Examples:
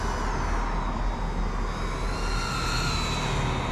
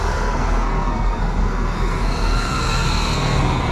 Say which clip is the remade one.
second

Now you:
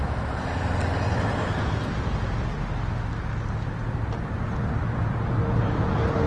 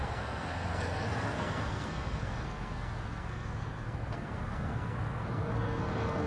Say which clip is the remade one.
second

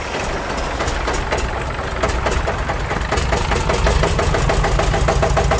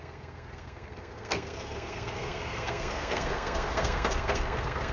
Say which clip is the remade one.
second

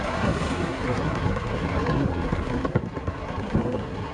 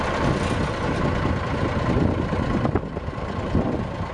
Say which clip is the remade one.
first